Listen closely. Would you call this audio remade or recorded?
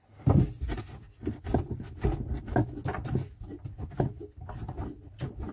recorded